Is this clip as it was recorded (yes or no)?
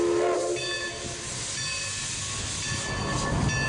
yes